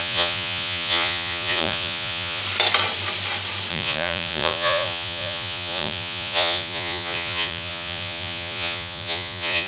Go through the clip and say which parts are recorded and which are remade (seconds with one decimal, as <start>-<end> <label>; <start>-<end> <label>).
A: 0.0-2.4 remade; 2.4-3.7 recorded; 3.7-9.7 remade